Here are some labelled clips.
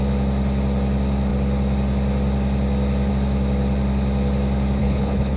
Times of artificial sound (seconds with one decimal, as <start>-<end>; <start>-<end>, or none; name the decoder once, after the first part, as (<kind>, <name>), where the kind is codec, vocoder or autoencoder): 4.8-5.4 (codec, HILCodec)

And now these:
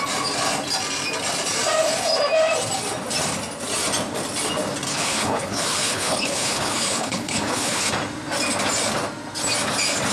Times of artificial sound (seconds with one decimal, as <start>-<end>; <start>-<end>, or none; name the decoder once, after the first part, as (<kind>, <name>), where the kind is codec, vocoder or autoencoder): 4.9-7.9 (codec, HILCodec)

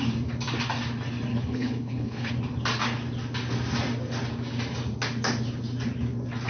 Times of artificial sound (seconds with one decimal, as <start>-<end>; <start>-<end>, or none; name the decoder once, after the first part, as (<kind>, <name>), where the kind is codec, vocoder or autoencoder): 1.3-2.3 (codec, HILCodec)

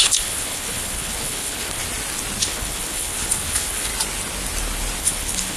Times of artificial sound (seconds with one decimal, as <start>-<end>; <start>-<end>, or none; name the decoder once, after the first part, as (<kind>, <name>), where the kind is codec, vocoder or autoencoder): 0.0-1.8 (codec, HILCodec); 2.4-3.9; 5.0-5.6

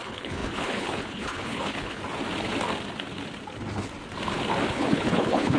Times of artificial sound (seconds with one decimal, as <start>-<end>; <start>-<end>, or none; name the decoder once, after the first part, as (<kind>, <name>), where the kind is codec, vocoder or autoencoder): 0.0-2.0 (codec, HILCodec); 4.7-5.6

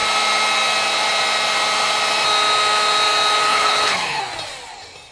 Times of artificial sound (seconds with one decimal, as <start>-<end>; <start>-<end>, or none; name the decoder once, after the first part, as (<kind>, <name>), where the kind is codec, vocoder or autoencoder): 3.5-4.2 (codec, HILCodec)

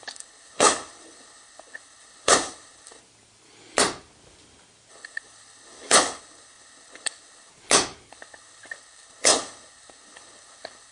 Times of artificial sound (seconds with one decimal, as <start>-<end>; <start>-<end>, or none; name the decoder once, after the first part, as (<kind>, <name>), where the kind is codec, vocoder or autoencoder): 0.0-3.0 (codec, HILCodec); 4.9-7.5; 8.1-10.9

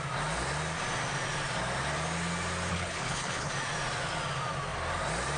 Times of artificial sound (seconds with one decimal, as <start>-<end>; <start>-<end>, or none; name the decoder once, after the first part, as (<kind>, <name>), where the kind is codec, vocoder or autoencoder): 2.7-3.5 (codec, HILCodec)